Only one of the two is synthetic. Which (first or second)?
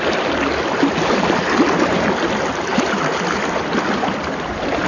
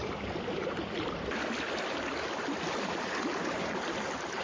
second